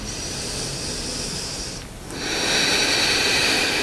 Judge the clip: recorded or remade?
recorded